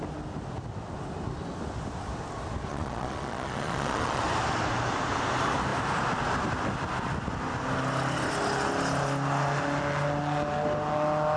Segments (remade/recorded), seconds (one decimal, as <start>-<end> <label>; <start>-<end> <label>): 0.0-2.7 recorded; 2.7-4.2 remade; 4.2-11.4 recorded

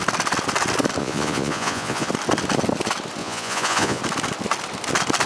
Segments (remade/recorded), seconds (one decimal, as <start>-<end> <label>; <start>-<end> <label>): 0.0-1.0 recorded; 1.0-2.1 remade; 2.1-3.2 recorded; 3.2-4.0 remade; 4.0-5.3 recorded